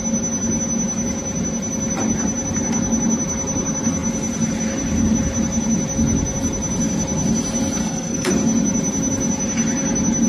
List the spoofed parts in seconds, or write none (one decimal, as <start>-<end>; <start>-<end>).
7.8-8.3